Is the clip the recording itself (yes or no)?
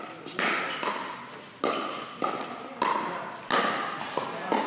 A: yes